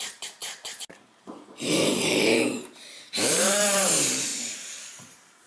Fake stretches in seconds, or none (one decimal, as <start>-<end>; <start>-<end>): 0.0-5.5

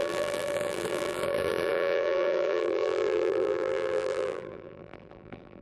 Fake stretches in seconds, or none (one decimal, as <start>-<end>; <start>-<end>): 0.0-5.6

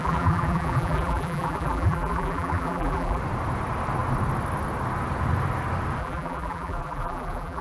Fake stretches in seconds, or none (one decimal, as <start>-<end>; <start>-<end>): 0.0-3.2; 6.0-7.6

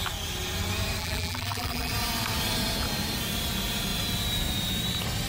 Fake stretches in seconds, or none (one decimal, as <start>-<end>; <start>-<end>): 1.0-1.9

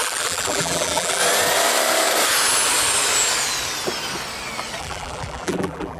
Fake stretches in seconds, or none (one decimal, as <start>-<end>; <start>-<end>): 0.0-1.2; 4.8-6.0

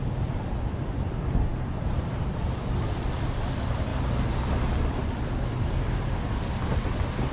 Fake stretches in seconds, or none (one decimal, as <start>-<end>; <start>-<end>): 1.5-3.4

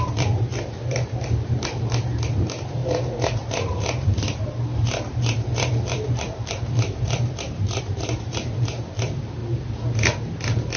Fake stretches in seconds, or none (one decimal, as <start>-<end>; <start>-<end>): 0.0-9.4

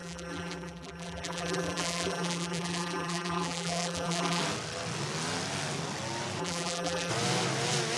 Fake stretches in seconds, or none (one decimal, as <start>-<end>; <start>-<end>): 0.0-4.4; 6.4-7.1